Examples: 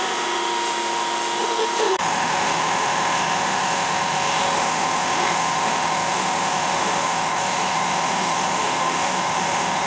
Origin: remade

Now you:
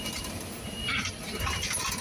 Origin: recorded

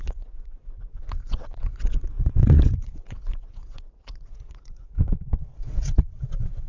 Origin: remade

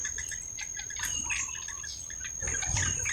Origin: recorded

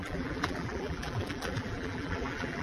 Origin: remade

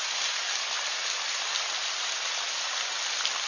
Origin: recorded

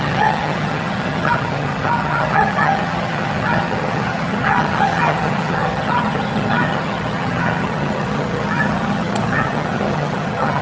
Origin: remade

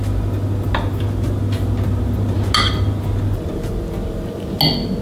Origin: recorded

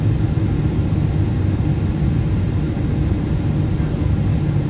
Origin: recorded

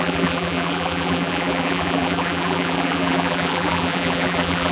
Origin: remade